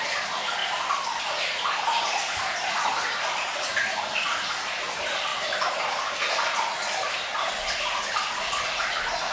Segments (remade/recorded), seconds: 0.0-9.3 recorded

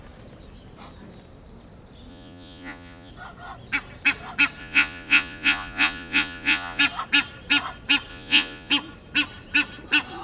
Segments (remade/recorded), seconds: 0.0-2.1 recorded; 2.1-3.1 remade; 3.1-4.6 recorded; 4.6-6.8 remade; 6.8-8.1 recorded; 8.1-8.7 remade; 8.7-10.2 recorded

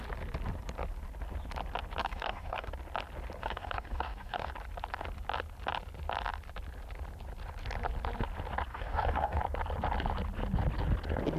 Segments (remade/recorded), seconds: 0.0-2.0 recorded; 2.0-2.7 remade; 2.7-3.4 recorded; 3.4-4.5 remade; 4.5-8.7 recorded; 8.7-9.4 remade; 9.4-11.4 recorded

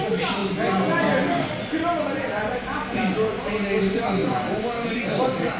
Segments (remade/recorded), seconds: 0.0-5.6 recorded

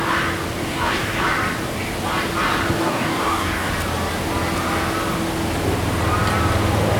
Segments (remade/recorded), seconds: 0.0-0.6 recorded; 0.6-1.2 remade; 1.2-2.8 recorded; 2.8-3.7 remade; 3.7-7.0 recorded

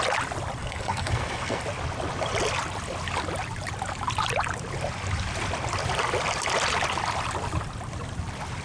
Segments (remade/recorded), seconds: 0.0-0.6 recorded; 0.6-1.6 remade; 1.6-8.6 recorded